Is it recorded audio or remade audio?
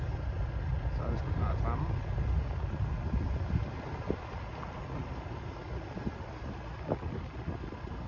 recorded